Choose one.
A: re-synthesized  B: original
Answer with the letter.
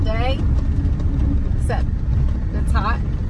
B